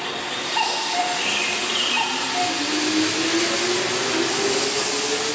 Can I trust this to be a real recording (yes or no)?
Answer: yes